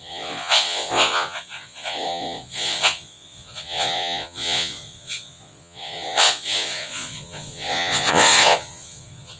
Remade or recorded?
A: remade